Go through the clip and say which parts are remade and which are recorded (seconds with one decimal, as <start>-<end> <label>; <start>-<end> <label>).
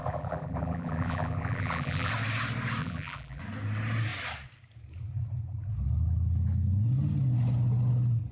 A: 0.0-2.1 remade; 2.1-2.8 recorded; 2.8-3.4 remade; 3.4-8.3 recorded